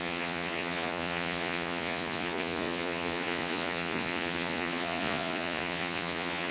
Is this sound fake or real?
fake